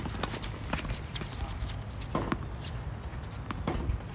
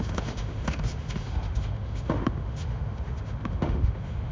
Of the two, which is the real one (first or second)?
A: first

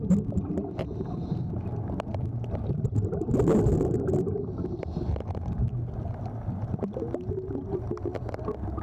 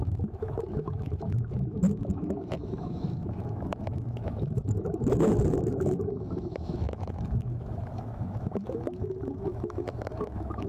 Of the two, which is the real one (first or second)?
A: first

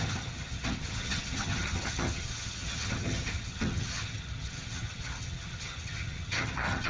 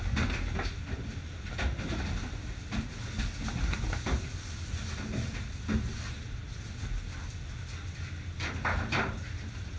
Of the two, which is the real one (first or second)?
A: second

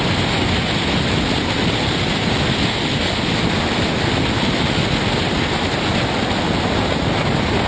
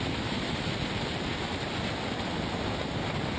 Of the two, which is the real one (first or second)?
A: first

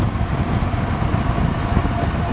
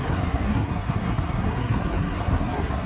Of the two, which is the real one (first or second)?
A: first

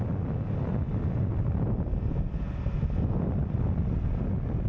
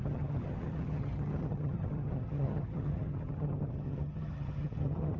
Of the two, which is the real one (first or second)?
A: first